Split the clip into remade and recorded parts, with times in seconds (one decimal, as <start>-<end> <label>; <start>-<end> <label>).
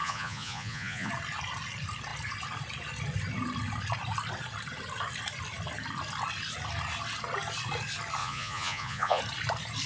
0.0-1.1 remade; 1.1-8.2 recorded; 8.2-9.2 remade; 9.2-9.9 recorded